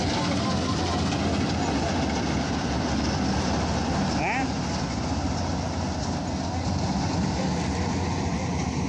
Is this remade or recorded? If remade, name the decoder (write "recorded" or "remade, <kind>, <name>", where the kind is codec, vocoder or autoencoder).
recorded